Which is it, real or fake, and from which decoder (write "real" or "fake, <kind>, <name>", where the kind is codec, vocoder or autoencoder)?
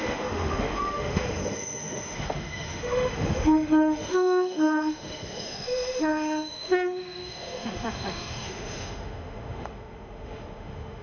fake, autoencoder, DAC-VAE